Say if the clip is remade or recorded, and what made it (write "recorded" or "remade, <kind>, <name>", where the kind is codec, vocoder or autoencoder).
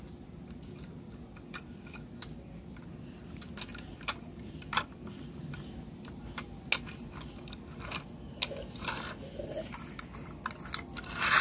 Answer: recorded